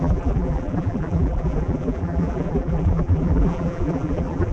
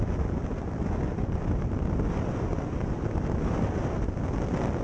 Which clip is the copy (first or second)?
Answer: first